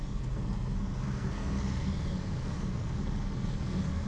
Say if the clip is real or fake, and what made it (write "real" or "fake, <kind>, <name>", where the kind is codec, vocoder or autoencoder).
fake, codec, SNAC